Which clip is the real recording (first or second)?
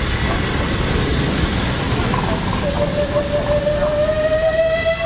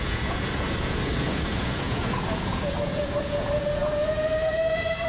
first